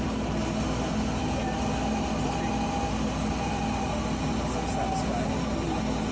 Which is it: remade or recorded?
recorded